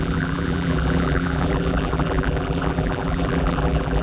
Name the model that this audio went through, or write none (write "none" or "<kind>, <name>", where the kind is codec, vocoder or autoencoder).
vocoder, BigVGAN v2